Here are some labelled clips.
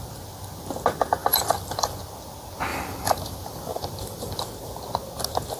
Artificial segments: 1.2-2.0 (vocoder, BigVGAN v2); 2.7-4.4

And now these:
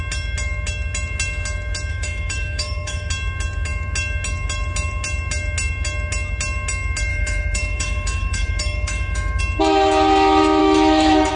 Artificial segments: 1.9-3.1 (autoencoder, DAC-VAE); 7.1-9.4; 10.6-11.4

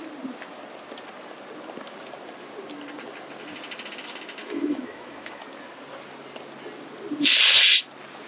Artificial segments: 4.4-5.4 (autoencoder, DAC-VAE)